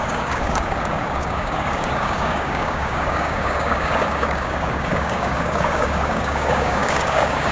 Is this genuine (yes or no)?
no